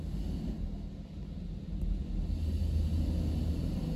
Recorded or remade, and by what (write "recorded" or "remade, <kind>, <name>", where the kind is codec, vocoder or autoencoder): recorded